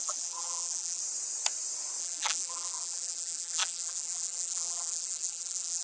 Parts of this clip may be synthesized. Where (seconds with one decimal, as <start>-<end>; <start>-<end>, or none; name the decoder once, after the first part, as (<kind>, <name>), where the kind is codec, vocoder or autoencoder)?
0.0-1.0 (vocoder, BigVGAN v2); 2.0-5.8